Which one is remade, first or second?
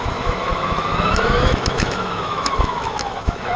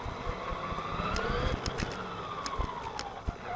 first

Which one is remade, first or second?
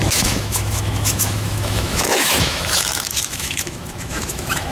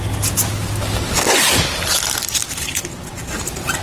first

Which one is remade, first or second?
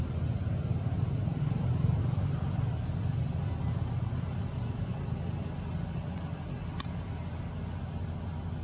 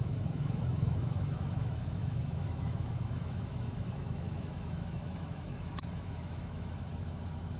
second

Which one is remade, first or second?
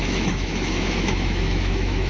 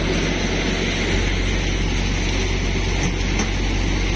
first